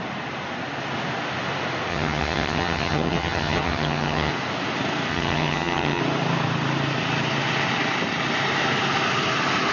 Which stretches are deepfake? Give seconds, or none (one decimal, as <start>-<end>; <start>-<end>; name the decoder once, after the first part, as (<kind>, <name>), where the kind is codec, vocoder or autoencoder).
1.9-4.3 (vocoder, HiFi-GAN); 5.1-6.0